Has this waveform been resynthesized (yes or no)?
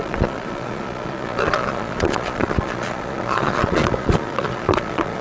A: yes